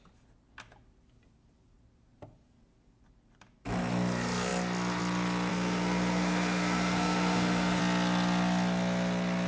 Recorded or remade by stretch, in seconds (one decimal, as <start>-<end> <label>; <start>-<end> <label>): 0.0-5.5 recorded; 5.5-7.8 remade; 7.8-9.5 recorded